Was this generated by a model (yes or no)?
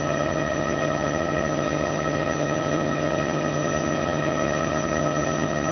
yes